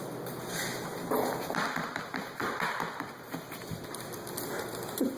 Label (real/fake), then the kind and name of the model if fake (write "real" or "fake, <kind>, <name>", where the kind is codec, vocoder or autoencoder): real